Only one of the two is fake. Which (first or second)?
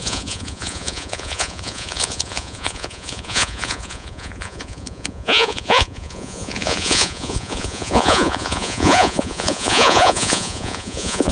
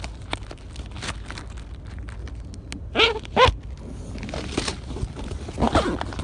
first